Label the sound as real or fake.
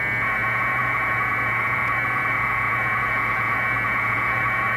fake